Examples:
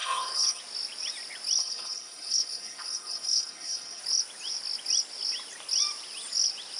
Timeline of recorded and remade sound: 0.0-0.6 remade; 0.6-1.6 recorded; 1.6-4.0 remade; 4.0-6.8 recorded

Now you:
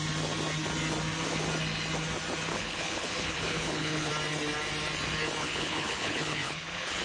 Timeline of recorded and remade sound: 0.0-2.5 recorded; 2.5-4.1 remade; 4.1-5.4 recorded; 5.4-7.0 remade

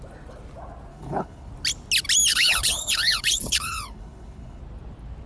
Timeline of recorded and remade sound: 0.0-0.9 recorded; 0.9-1.5 remade; 1.5-2.3 recorded; 2.3-4.6 remade; 4.6-5.3 recorded

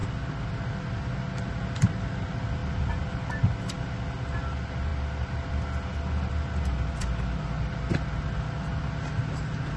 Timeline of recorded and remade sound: 0.0-9.8 recorded

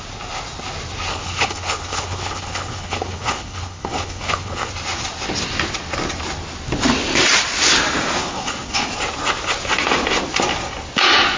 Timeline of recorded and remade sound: 0.0-1.1 recorded; 1.1-4.7 remade; 4.7-8.2 recorded; 8.2-8.9 remade; 8.9-11.4 recorded

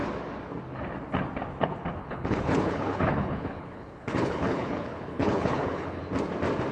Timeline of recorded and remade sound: 0.0-2.0 recorded; 2.0-6.0 remade; 6.0-6.7 recorded